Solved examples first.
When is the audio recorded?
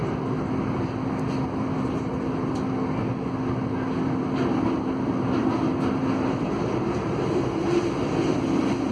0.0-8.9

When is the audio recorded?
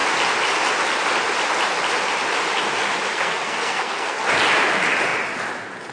0.0-3.1; 4.2-5.9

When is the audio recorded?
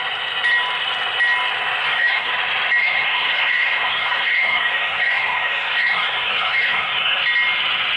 0.0-1.8; 2.3-2.8; 7.2-8.0